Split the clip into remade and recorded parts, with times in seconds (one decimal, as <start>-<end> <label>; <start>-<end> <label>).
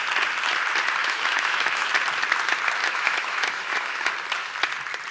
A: 0.0-1.0 recorded; 1.0-1.9 remade; 1.9-2.8 recorded; 2.8-4.1 remade; 4.1-5.1 recorded